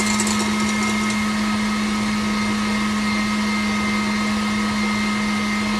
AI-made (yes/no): no